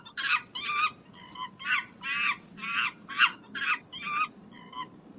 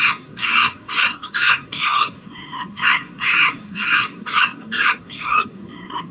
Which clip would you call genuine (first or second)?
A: first